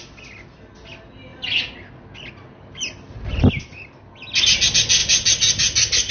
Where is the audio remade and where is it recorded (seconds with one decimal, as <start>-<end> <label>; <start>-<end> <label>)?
0.0-6.1 recorded